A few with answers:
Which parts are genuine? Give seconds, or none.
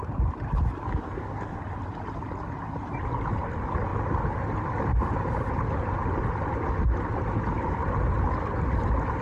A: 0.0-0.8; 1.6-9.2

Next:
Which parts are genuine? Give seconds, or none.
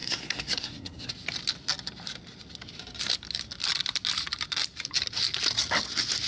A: 1.1-6.3